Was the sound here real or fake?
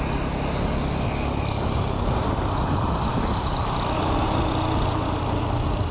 real